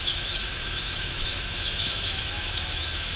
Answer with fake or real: fake